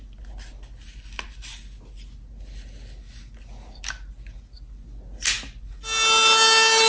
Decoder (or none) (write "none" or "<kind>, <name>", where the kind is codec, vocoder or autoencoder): none